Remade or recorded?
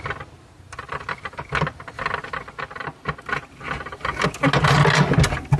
recorded